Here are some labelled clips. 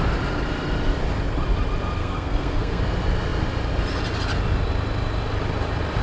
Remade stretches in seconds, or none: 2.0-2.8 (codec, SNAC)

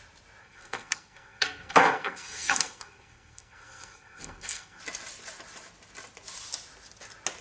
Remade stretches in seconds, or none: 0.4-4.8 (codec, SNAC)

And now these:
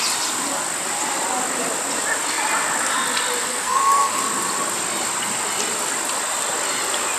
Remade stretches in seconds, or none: 3.5-4.2 (codec, SNAC)

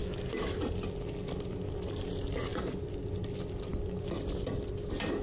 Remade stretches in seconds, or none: none

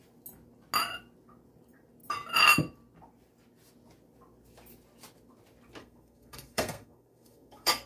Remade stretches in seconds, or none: 5.8-7.9 (codec, SNAC)

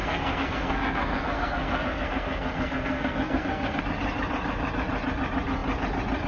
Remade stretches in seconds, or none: 0.0-3.8 (codec, SNAC)